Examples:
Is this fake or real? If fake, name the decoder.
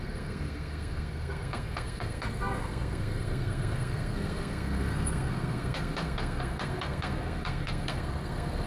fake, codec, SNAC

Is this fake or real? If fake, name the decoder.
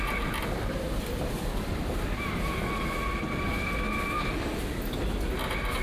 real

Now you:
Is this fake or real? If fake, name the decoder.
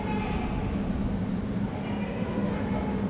real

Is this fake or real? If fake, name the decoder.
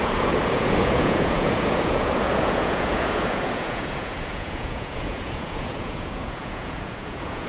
fake, vocoder, Vocos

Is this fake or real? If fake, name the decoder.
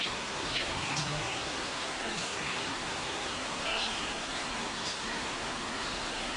fake, codec, SNAC